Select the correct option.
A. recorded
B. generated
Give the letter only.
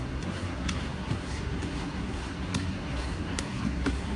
B